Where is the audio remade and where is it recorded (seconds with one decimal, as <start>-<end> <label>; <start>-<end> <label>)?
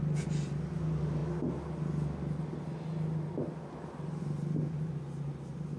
0.0-5.8 recorded